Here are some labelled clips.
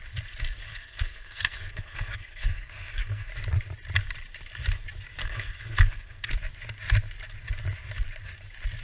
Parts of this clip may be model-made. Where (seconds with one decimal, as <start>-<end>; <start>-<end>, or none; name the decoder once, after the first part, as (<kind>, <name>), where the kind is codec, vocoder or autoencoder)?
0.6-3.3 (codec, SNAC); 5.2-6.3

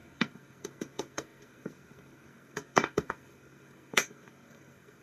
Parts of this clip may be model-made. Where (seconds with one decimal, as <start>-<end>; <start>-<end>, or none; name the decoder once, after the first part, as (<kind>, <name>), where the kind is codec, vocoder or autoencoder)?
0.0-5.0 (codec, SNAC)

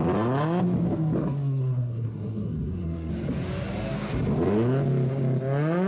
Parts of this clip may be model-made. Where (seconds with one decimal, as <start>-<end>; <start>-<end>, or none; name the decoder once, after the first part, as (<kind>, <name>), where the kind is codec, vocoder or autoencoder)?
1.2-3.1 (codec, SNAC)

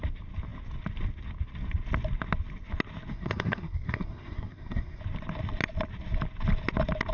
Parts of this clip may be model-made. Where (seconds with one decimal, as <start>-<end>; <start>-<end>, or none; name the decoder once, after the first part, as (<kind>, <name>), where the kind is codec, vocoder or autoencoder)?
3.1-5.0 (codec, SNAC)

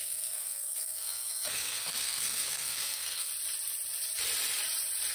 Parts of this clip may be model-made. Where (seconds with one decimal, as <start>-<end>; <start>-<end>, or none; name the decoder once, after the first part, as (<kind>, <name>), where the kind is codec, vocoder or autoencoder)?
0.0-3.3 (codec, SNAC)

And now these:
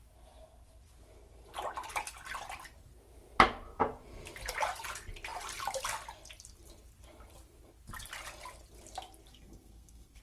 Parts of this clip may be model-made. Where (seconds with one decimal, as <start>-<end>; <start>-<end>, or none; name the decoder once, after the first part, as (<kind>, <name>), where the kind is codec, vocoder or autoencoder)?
9.3-10.2 (codec, SNAC)

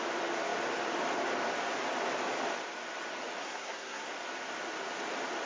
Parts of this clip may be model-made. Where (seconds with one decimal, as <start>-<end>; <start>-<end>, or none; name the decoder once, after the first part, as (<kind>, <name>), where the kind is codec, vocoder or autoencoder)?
3.4-4.1 (codec, SNAC)